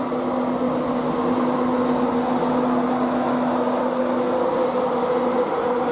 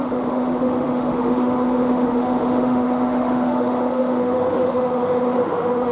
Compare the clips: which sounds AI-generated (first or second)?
second